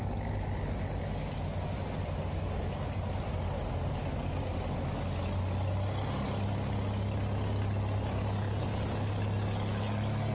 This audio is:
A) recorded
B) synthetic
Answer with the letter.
A